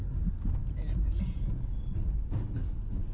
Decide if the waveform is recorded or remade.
recorded